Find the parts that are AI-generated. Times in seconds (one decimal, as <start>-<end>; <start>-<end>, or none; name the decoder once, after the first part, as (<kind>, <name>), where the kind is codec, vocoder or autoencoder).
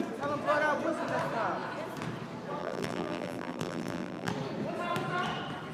2.6-4.3 (vocoder, BigVGAN v2)